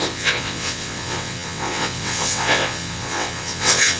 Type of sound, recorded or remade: remade